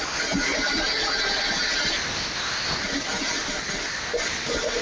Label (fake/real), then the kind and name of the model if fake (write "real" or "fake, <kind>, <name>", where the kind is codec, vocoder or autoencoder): real